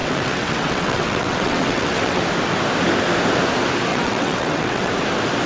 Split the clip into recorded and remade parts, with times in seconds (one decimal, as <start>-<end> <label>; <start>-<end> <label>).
0.0-2.2 remade; 2.2-3.9 recorded; 3.9-4.9 remade; 4.9-5.5 recorded